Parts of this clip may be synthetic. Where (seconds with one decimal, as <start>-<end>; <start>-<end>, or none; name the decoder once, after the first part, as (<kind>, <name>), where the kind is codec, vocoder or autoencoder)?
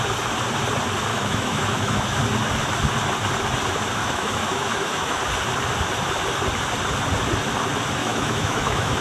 1.1-2.2 (autoencoder, DAC-VAE); 4.0-5.2; 8.0-9.0